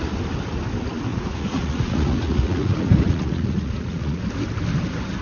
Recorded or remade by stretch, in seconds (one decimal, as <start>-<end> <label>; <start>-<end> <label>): 0.0-1.1 recorded; 1.1-4.2 remade; 4.2-5.2 recorded